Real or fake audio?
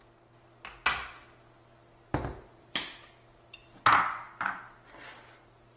real